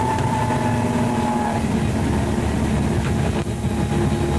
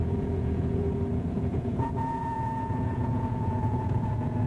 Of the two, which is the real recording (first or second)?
first